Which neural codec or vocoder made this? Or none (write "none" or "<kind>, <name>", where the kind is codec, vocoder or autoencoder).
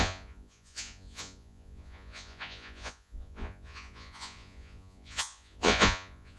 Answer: vocoder, Vocos